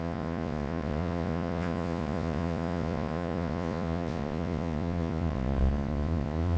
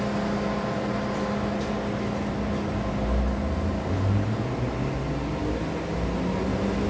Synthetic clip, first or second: first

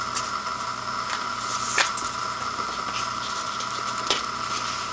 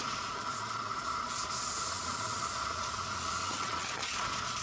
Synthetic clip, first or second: second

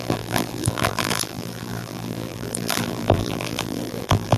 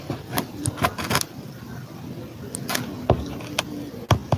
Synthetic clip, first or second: first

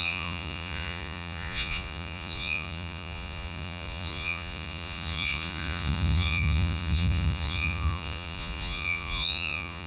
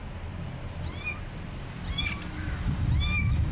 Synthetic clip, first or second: first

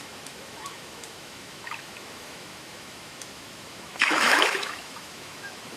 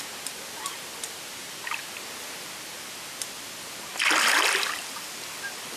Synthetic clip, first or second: first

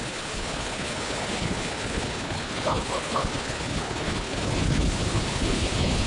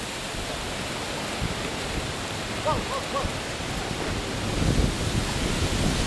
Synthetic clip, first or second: first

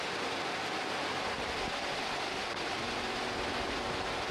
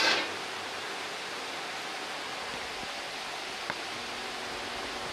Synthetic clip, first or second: first